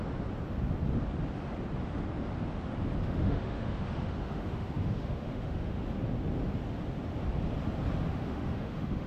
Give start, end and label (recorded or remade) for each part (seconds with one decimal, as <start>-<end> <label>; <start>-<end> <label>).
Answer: 0.0-3.0 recorded; 3.0-5.8 remade; 5.8-8.1 recorded; 8.1-9.1 remade